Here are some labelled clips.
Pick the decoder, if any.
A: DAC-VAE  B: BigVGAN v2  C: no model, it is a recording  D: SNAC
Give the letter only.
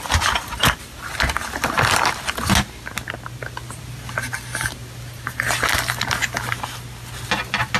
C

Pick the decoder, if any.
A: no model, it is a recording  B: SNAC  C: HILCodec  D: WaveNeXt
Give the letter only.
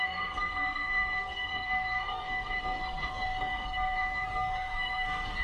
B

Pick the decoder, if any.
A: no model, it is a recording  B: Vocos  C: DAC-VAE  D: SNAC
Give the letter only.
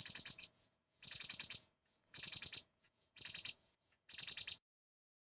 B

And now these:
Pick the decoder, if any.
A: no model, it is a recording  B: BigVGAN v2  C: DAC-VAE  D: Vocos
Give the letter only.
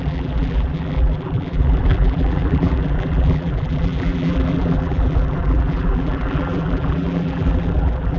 B